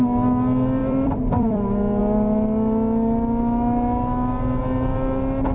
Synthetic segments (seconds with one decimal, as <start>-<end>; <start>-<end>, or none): 0.8-2.0